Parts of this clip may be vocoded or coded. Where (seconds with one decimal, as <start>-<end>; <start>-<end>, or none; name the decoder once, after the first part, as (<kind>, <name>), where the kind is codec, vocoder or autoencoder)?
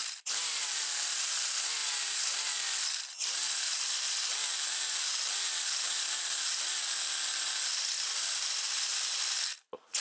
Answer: none